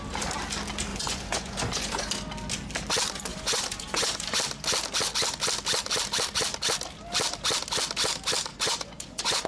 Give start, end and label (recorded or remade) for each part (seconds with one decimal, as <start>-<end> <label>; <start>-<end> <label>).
0.0-0.9 recorded; 0.9-2.1 remade; 2.1-3.3 recorded; 3.3-4.4 remade; 4.4-8.5 recorded; 8.5-9.5 remade